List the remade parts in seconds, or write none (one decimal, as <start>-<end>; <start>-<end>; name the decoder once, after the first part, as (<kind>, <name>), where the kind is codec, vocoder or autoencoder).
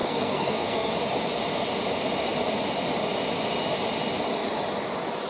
0.0-0.9 (codec, SNAC)